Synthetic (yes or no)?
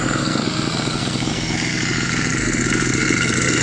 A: yes